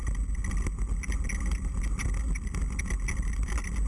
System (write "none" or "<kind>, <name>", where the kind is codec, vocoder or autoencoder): none